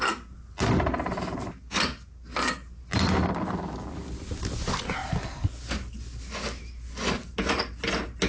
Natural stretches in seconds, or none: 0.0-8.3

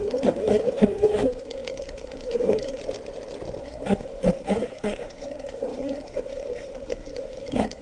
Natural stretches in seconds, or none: 2.8-3.6

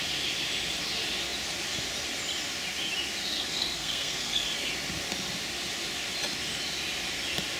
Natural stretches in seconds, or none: 0.0-3.2; 4.7-7.6

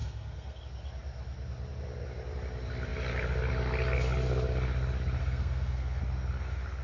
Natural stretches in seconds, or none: 0.6-5.2; 6.0-6.8

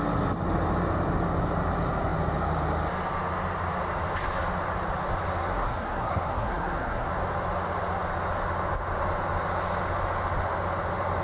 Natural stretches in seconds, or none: 0.0-5.4; 7.1-11.2

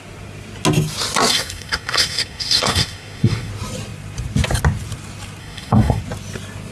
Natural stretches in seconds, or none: 0.0-1.3; 3.5-5.4; 6.0-6.7